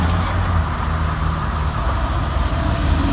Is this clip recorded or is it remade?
recorded